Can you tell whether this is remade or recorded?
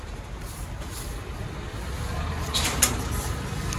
recorded